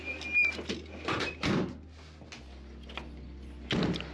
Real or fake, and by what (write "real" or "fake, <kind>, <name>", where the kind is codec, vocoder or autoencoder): real